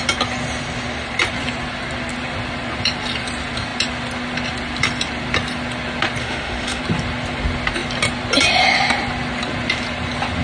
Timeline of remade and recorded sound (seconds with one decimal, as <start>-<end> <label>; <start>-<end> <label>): 0.0-6.2 recorded; 6.2-6.8 remade; 6.8-10.4 recorded